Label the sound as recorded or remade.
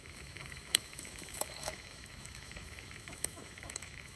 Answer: remade